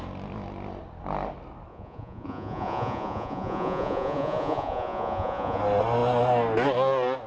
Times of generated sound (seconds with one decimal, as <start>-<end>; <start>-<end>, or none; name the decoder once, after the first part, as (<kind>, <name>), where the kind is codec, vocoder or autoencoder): 1.7-5.6 (vocoder, Vocos)